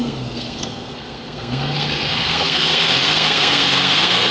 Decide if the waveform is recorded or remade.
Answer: remade